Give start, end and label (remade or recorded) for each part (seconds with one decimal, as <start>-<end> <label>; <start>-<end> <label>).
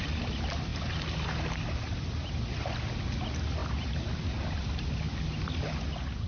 0.0-6.3 recorded